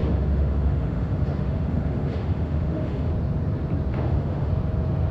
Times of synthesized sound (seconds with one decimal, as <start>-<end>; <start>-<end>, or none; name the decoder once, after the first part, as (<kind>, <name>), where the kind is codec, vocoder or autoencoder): 0.0-3.1 (autoencoder, DAC-VAE); 3.9-4.5